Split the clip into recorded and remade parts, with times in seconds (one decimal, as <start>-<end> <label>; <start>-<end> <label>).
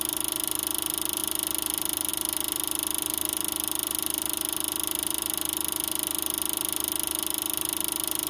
0.0-8.3 recorded